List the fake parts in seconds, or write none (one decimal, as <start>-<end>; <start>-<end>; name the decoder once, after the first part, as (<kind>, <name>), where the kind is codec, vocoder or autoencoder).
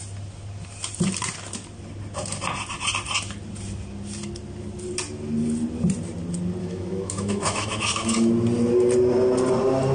6.6-8.3 (autoencoder, DAC-VAE)